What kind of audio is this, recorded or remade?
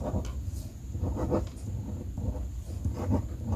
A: recorded